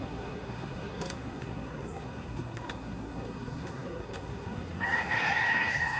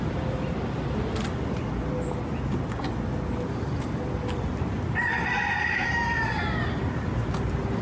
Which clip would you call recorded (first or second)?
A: second